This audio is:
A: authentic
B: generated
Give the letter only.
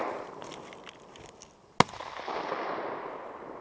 A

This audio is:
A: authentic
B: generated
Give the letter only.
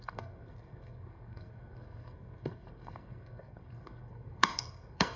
B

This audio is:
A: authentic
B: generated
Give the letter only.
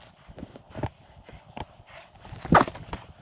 A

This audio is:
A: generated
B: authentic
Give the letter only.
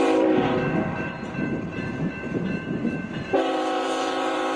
A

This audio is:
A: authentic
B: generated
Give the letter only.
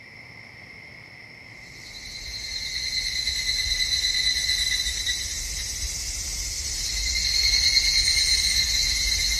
A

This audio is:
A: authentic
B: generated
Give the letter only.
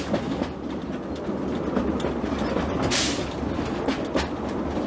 A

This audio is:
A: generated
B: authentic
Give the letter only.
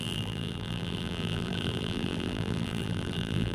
A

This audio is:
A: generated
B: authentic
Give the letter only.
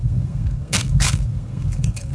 A